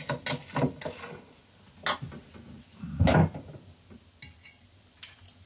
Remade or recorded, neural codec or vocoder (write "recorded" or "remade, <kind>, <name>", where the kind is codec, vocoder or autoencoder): recorded